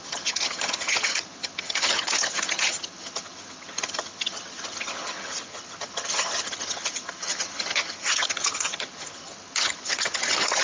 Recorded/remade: remade